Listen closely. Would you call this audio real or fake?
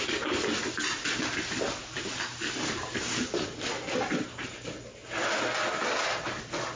real